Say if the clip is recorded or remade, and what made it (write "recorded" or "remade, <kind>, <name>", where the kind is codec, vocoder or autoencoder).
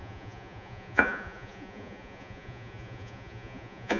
remade, vocoder, Vocos